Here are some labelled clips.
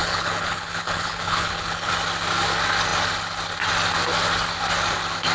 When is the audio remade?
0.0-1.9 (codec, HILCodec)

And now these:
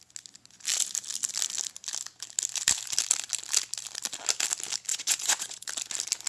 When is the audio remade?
4.9-5.7 (vocoder, Vocos)